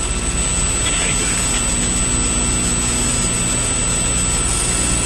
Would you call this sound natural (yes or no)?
yes